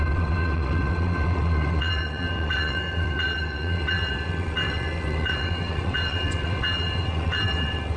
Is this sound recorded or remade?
remade